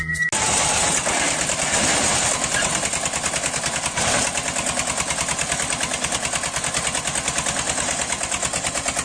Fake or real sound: real